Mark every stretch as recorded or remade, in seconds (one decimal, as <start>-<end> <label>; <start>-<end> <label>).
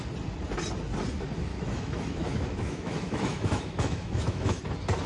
0.0-1.5 recorded; 1.5-4.6 remade; 4.6-5.1 recorded